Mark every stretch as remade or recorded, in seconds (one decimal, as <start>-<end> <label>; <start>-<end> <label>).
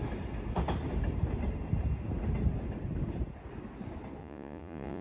0.0-4.2 recorded; 4.2-5.0 remade